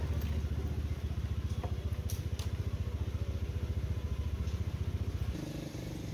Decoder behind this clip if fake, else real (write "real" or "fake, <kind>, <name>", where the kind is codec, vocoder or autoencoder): real